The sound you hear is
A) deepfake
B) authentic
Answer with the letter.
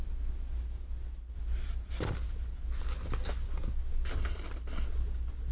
B